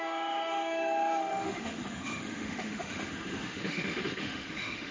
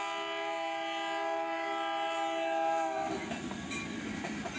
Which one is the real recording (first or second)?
second